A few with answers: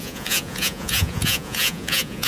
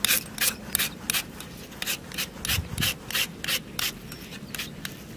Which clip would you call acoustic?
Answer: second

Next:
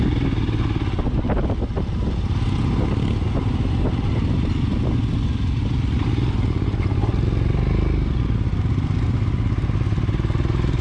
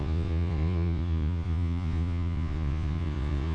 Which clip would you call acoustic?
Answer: first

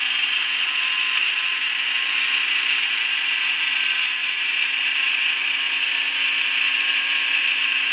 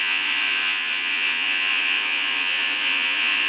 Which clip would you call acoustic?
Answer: first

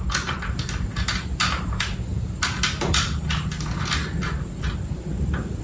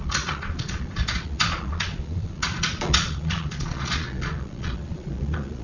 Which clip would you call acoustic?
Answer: first